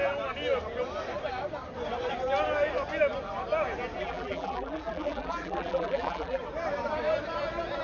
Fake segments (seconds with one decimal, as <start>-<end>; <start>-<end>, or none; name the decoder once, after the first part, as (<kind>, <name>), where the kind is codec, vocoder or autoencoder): 4.0-6.4 (vocoder, BigVGAN v2)